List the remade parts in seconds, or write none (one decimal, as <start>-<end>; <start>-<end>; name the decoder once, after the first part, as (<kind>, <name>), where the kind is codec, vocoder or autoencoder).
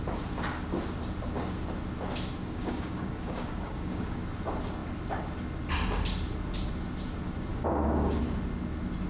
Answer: 2.4-4.2 (codec, DAC); 7.5-8.2